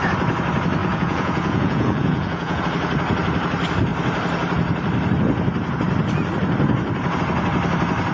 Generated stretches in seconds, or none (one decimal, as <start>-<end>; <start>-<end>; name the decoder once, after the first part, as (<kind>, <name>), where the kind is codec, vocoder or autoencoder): 0.8-2.6 (vocoder, Vocos)